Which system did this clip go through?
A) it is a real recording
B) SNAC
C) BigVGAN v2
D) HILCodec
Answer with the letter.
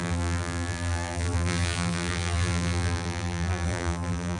C